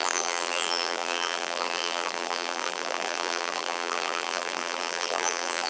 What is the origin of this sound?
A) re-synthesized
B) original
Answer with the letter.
A